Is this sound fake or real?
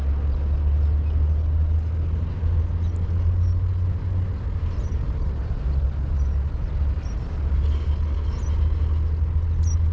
real